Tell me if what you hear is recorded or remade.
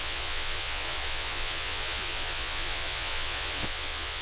remade